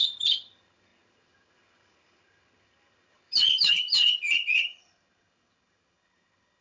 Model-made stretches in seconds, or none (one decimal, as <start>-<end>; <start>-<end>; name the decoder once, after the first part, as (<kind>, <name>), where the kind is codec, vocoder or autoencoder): 0.0-6.6 (vocoder, HiFi-GAN)

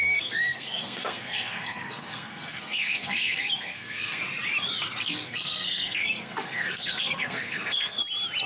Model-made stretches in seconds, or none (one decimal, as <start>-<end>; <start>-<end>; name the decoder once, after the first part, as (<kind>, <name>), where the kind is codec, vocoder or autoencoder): 0.0-4.2 (codec, SNAC); 5.0-8.0

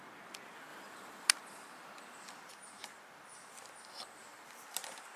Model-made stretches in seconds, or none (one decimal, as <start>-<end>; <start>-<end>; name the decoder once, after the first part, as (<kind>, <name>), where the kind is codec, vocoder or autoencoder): 0.7-2.5 (vocoder, BigVGAN v2)

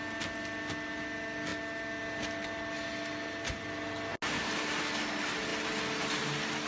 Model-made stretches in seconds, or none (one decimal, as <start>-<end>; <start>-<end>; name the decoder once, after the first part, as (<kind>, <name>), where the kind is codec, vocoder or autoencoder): none

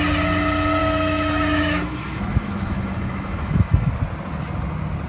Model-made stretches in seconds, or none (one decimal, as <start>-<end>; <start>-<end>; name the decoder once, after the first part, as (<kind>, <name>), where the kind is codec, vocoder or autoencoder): 0.8-3.9 (autoencoder, DAC-VAE)

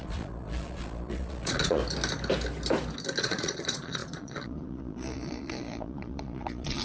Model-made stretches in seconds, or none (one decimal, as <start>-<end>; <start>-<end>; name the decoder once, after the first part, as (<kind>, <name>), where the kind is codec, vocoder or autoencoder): 0.0-1.8 (vocoder, Vocos); 3.2-6.8

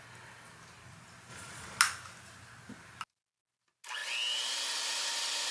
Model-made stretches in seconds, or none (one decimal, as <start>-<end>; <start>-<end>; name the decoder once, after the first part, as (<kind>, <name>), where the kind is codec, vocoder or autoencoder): 1.3-1.8 (vocoder, Vocos)